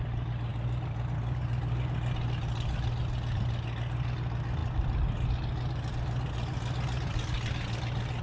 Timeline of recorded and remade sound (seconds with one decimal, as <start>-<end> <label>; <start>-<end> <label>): 0.0-8.2 recorded